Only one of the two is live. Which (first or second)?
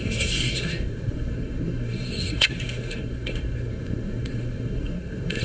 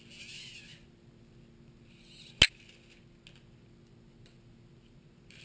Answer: second